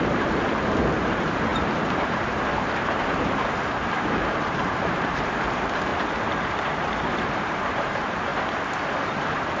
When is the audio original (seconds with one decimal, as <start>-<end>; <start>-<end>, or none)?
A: 8.3-9.6